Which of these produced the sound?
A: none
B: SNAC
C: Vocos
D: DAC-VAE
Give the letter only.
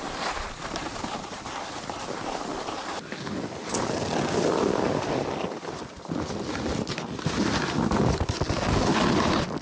A